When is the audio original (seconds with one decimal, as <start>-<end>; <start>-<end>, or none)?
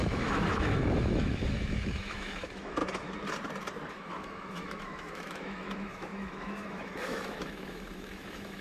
2.8-3.9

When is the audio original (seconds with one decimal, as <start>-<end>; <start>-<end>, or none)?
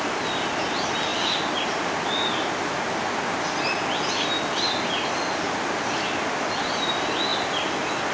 0.0-8.1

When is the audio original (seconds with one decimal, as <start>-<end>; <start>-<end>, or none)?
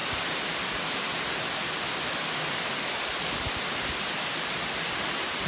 0.0-5.5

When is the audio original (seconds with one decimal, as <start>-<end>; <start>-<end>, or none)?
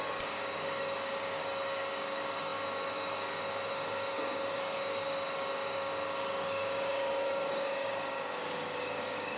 none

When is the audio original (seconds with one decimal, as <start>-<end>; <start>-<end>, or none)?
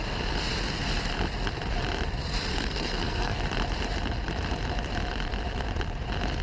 0.0-2.5; 3.4-6.4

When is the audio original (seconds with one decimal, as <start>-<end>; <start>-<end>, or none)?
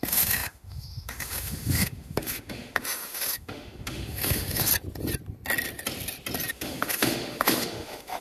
4.7-6.5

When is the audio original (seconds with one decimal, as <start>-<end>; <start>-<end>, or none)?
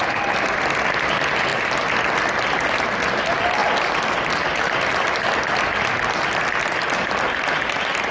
0.0-8.1